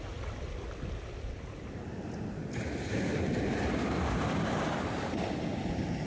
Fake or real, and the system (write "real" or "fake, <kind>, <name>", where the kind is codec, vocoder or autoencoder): real